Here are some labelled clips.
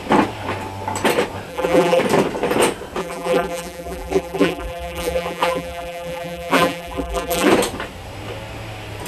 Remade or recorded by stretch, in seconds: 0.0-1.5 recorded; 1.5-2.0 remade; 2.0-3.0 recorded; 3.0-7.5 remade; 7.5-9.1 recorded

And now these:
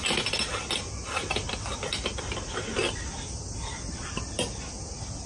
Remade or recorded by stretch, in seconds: 0.0-2.8 recorded; 2.8-4.1 remade; 4.1-5.3 recorded

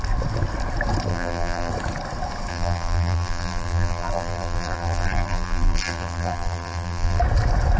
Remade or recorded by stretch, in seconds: 0.0-1.1 recorded; 1.1-1.7 remade; 1.7-2.5 recorded; 2.5-7.2 remade; 7.2-7.8 recorded